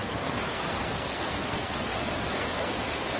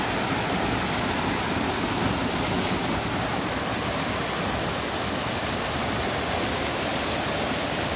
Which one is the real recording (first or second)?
second